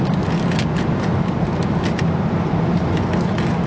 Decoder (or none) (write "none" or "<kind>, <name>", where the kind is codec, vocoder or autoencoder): none